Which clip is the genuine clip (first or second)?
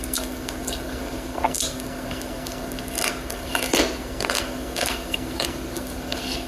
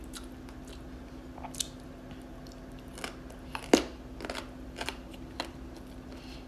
second